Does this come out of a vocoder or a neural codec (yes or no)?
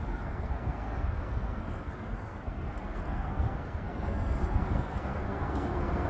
yes